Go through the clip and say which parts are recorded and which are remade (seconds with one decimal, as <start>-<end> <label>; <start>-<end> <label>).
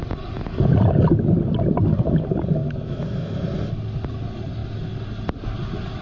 0.0-2.6 recorded; 2.6-3.3 remade; 3.3-6.0 recorded